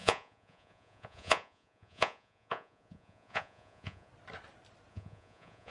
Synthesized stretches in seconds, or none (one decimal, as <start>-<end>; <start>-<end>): 0.0-4.1; 4.9-5.7